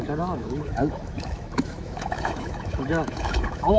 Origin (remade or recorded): remade